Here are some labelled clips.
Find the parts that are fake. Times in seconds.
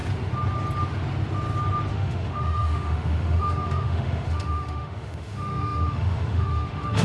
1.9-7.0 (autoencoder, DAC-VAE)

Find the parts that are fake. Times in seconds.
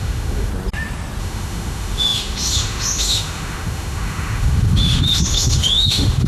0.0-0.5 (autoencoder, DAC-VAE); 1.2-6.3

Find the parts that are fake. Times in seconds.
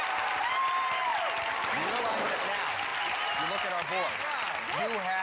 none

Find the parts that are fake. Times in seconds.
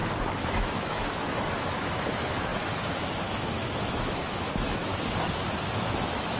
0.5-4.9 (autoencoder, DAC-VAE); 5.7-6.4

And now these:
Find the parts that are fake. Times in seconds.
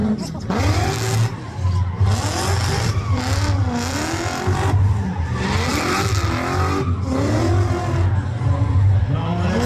none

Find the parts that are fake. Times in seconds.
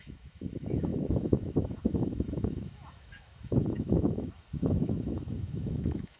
0.0-6.2 (autoencoder, DAC-VAE)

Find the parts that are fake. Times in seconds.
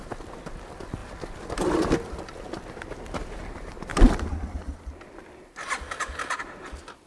none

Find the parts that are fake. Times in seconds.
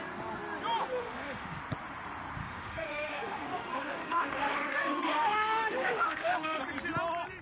0.9-1.6 (autoencoder, DAC-VAE); 2.4-6.6